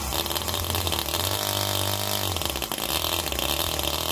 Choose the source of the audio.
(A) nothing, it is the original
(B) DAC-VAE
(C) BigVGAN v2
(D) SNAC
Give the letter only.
A